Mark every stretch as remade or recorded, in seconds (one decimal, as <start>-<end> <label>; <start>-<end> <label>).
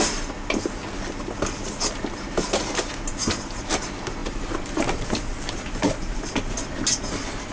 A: 0.0-4.2 recorded; 4.2-6.2 remade; 6.2-7.5 recorded